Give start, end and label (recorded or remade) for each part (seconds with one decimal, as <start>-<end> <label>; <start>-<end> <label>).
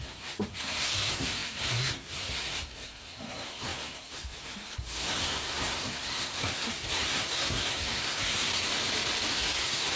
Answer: 0.0-8.7 remade; 8.7-9.3 recorded; 9.3-10.0 remade